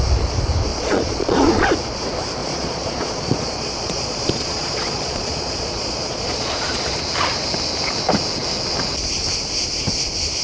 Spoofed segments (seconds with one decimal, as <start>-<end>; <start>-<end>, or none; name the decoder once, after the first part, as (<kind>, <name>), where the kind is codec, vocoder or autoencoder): 0.7-1.7 (vocoder, Vocos); 2.4-7.0